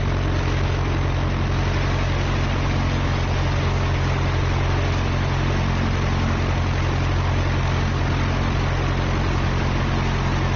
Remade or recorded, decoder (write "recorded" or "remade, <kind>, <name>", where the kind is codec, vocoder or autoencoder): recorded